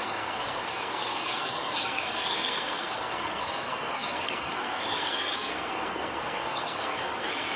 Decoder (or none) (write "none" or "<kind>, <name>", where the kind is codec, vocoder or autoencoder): codec, SNAC